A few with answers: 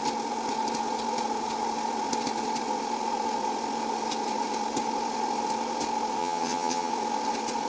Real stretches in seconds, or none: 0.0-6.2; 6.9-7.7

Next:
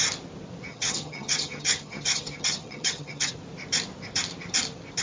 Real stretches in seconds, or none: 0.0-0.7; 3.3-5.0

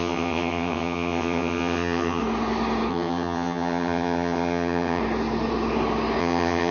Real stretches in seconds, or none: 2.2-2.9; 5.0-6.2

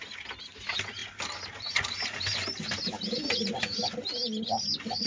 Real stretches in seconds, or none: 0.0-5.1

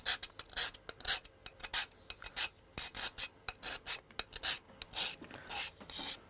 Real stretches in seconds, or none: 0.0-6.3

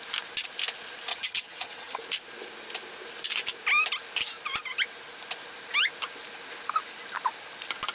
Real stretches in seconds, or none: 0.0-1.1; 2.0-7.9

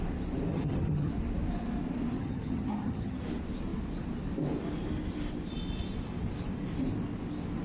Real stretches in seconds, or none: 0.0-0.5; 1.1-2.1; 3.2-7.6